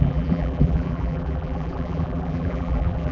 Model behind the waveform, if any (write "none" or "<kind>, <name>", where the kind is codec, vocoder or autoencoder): vocoder, BigVGAN v2